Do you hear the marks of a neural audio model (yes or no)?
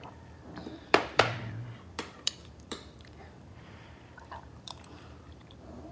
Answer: yes